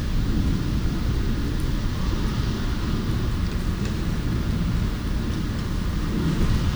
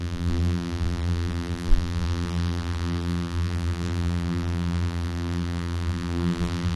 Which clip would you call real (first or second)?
first